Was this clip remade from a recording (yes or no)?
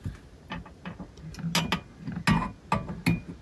no